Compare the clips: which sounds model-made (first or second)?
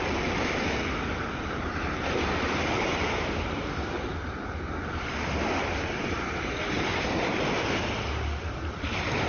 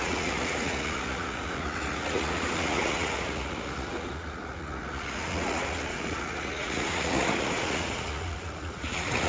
second